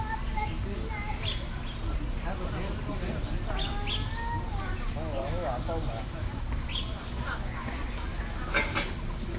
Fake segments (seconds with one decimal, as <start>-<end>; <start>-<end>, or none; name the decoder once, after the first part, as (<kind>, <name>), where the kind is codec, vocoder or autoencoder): 6.7-7.9 (vocoder, Vocos)